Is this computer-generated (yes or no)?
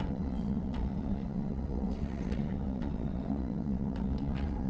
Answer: yes